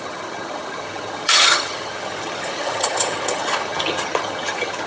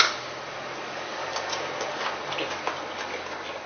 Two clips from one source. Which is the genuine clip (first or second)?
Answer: second